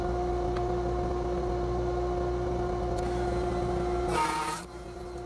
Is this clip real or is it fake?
real